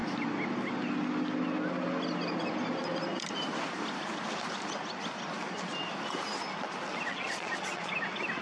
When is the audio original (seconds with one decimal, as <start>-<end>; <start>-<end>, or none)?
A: 0.0-7.1; 7.9-8.4